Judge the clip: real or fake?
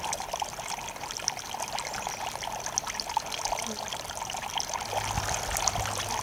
real